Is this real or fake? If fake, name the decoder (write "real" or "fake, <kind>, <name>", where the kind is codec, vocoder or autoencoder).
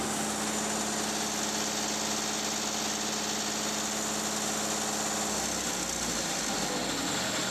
real